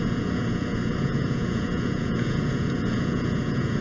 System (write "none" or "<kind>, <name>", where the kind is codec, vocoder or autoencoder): vocoder, Vocos